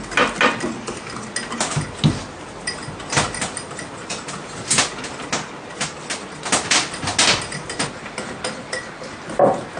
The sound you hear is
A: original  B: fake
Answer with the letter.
A